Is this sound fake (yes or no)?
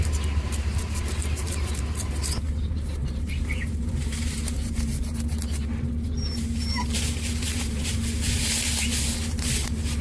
yes